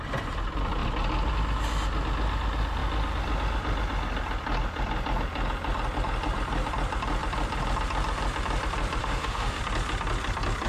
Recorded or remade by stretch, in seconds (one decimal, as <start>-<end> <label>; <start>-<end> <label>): 0.0-9.0 recorded; 9.0-9.6 remade; 9.6-10.7 recorded